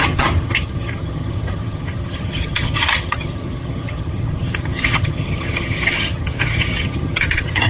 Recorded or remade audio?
remade